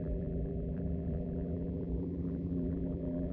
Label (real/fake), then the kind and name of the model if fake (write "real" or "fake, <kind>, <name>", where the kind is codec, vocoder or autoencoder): fake, vocoder, BigVGAN v2